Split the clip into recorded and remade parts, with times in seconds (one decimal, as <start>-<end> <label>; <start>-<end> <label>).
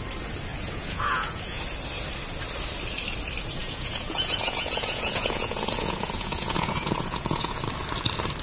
0.0-0.5 recorded; 0.5-1.6 remade; 1.6-3.6 recorded; 3.6-7.6 remade; 7.6-8.4 recorded